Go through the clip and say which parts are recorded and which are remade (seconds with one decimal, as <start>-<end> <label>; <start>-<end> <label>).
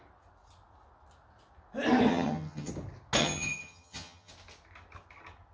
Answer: 0.0-2.1 recorded; 2.1-2.7 remade; 2.7-3.2 recorded; 3.2-4.3 remade; 4.3-5.5 recorded